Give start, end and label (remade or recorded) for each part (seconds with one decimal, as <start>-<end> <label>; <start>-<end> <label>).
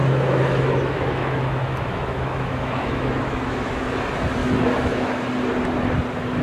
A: 0.0-3.8 remade; 3.8-4.4 recorded; 4.4-5.3 remade; 5.3-6.4 recorded